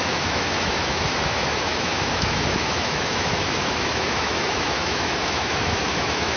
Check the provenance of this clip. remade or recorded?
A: remade